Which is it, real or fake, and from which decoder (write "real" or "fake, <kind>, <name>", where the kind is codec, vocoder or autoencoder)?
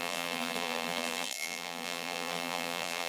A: fake, vocoder, BigVGAN v2